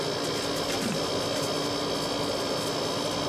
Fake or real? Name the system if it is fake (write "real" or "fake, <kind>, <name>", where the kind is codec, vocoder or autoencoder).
real